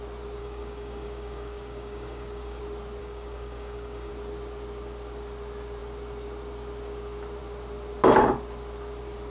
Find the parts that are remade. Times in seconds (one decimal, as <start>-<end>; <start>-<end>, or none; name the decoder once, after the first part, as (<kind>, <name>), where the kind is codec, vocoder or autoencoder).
0.4-2.6 (codec, DAC); 3.0-4.1